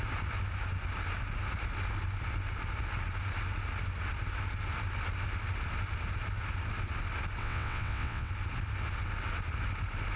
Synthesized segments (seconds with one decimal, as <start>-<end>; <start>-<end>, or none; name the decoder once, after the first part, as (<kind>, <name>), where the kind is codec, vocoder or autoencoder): 7.4-8.3 (vocoder, WaveNeXt)